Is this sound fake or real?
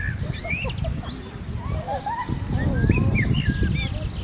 real